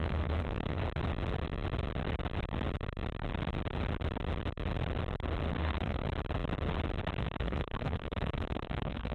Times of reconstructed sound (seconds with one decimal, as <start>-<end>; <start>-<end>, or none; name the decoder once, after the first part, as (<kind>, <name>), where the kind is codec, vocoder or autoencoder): 0.0-0.8 (autoencoder, DAC-VAE); 5.6-6.0; 7.2-9.1